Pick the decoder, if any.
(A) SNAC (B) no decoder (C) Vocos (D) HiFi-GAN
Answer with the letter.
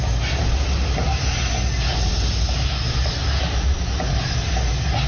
B